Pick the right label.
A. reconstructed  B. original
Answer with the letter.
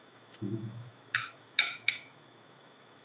A